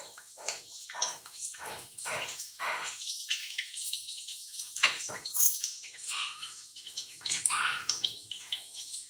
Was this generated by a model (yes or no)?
yes